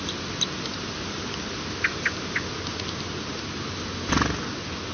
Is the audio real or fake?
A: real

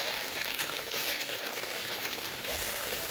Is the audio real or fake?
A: fake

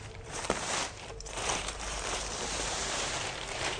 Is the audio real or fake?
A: fake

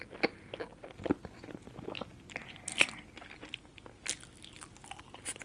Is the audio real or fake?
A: real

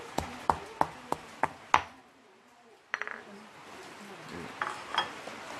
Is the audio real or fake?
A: real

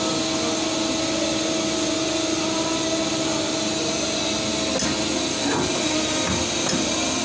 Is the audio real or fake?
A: real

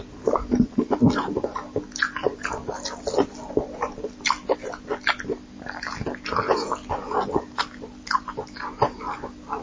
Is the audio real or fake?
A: real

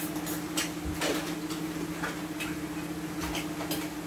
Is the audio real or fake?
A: real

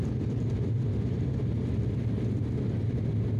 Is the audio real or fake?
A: real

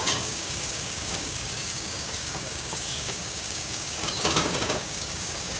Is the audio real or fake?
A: fake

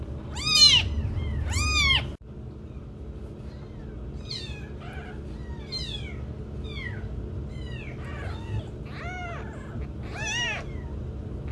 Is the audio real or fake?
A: real